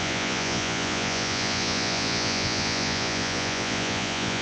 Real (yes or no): no